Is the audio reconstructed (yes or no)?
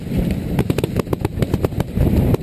yes